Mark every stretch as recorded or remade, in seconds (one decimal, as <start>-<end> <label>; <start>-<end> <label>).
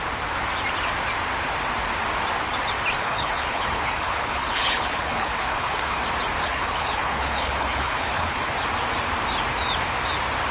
0.0-3.0 recorded; 3.0-6.0 remade; 6.0-6.4 recorded; 6.4-8.5 remade; 8.5-10.5 recorded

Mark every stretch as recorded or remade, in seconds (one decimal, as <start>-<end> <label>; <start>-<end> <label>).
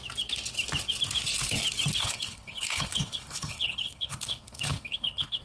0.0-2.0 recorded; 2.0-5.4 remade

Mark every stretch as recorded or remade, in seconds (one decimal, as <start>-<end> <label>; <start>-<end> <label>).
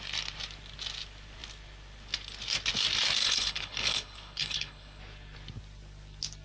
0.0-3.2 recorded; 3.2-5.0 remade; 5.0-6.4 recorded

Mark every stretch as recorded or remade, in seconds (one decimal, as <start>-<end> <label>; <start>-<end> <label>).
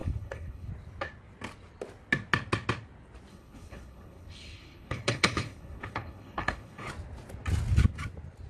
0.0-0.7 remade; 0.7-3.3 recorded; 3.3-6.9 remade; 6.9-8.5 recorded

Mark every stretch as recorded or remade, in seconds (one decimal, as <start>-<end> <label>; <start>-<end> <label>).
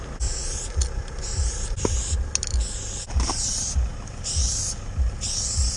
0.0-5.8 recorded